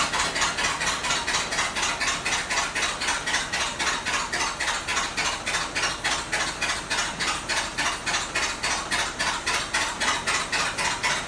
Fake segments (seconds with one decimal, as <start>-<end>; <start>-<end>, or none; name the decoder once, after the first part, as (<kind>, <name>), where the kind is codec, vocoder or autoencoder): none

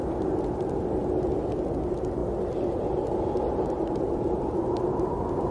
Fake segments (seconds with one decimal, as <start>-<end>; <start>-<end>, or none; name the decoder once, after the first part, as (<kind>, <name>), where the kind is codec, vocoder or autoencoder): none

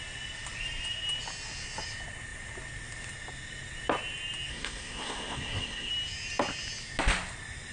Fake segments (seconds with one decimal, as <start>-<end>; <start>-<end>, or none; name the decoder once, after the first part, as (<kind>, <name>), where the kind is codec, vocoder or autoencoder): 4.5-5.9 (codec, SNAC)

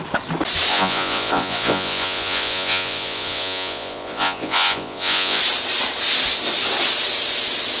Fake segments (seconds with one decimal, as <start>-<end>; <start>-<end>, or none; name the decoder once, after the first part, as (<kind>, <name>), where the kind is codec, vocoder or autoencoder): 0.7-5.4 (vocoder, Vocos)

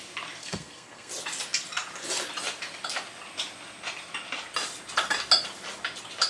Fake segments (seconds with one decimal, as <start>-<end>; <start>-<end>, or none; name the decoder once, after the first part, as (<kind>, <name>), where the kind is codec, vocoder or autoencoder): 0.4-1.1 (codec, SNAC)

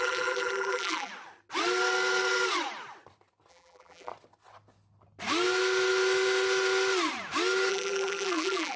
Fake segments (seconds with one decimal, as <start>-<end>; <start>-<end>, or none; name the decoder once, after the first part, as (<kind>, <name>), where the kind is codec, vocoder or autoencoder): 0.0-1.1 (vocoder, BigVGAN v2); 3.5-4.1; 7.7-8.8

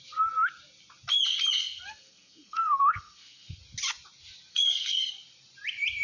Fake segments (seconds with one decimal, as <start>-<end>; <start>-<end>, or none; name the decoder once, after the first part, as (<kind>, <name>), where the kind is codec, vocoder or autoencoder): 1.6-3.6 (codec, SNAC); 4.5-5.1